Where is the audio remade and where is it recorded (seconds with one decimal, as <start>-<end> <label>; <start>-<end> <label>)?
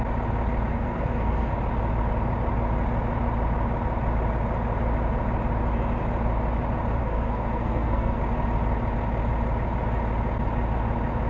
0.0-0.7 recorded; 0.7-1.5 remade; 1.5-7.0 recorded; 7.0-8.2 remade; 8.2-11.3 recorded